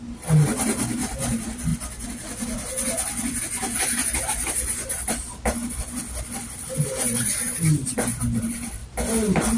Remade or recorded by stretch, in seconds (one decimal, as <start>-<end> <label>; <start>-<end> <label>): 0.0-1.7 remade; 1.7-4.2 recorded; 4.2-6.0 remade; 6.0-6.5 recorded; 6.5-8.8 remade; 8.8-9.6 recorded